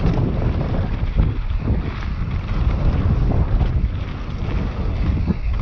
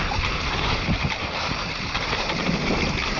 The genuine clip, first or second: first